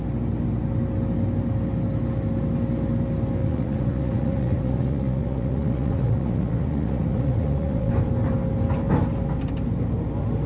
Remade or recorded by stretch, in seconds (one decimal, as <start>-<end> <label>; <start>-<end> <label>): 0.0-3.4 recorded; 3.4-7.9 remade; 7.9-10.5 recorded